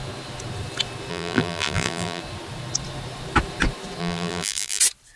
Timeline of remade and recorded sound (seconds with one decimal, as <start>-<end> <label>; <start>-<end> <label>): 0.0-1.1 recorded; 1.1-2.2 remade; 2.2-4.0 recorded; 4.0-4.8 remade; 4.8-5.2 recorded